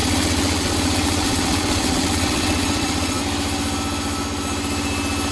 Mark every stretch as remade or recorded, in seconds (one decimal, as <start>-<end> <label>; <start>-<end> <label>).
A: 0.0-3.2 remade; 3.2-5.3 recorded